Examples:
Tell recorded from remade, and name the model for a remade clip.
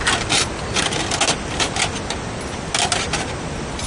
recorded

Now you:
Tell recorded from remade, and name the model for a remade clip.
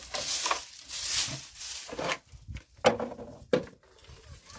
recorded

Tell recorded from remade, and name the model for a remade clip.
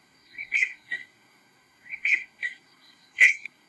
remade, codec, SNAC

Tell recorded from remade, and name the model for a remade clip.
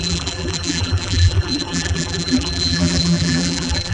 remade, vocoder, BigVGAN v2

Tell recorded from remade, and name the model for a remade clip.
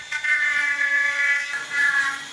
remade, vocoder, Vocos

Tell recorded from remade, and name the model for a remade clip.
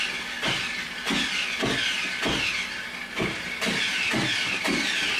recorded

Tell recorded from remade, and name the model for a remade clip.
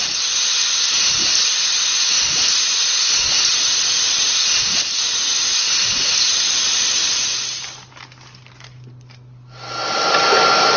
recorded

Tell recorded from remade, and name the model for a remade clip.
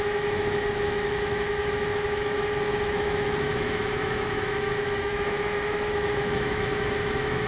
remade, autoencoder, DAC-VAE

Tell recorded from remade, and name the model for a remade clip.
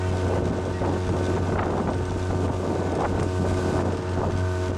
recorded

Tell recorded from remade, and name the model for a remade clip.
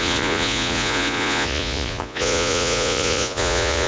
remade, vocoder, Vocos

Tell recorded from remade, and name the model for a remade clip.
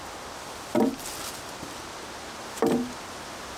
recorded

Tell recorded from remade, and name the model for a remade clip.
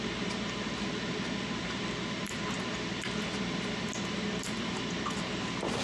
recorded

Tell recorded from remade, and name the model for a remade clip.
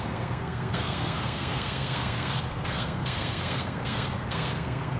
remade, codec, SNAC